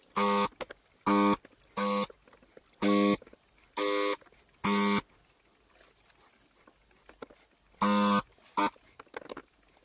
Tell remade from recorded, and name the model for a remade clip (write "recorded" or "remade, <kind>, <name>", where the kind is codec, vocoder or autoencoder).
recorded